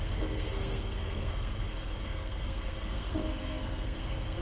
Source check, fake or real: fake